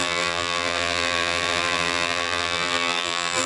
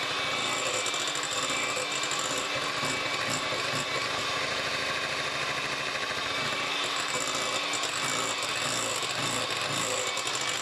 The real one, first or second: second